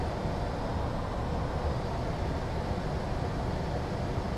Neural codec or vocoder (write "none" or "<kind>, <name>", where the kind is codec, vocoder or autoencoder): vocoder, BigVGAN v2